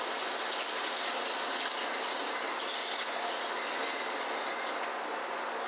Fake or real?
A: real